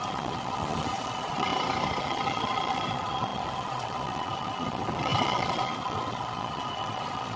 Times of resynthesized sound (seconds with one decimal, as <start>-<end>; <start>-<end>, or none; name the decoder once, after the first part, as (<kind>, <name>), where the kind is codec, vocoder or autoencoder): 0.0-1.5 (vocoder, Vocos); 2.0-7.4